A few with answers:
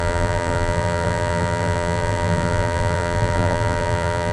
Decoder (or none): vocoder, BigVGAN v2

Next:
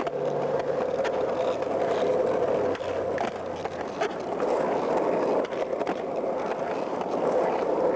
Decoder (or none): none